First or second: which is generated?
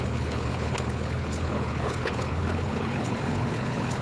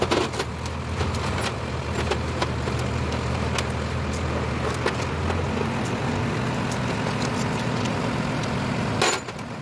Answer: first